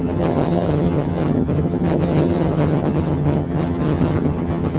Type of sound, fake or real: fake